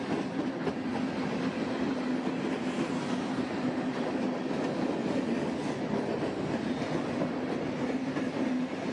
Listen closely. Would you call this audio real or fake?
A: real